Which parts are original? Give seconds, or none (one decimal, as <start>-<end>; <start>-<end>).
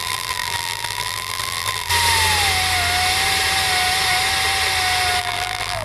1.9-5.2